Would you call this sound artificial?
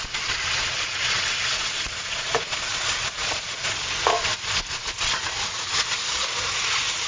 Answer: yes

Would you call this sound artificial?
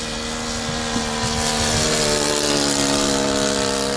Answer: no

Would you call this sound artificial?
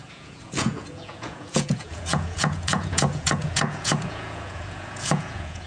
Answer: yes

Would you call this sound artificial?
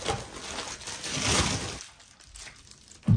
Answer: no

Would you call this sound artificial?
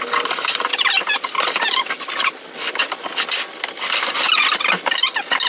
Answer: no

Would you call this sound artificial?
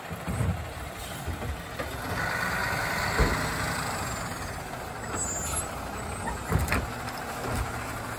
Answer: no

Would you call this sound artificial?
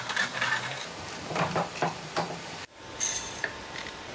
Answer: yes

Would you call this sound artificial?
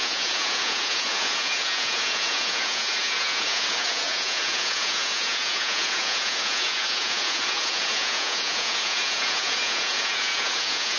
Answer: yes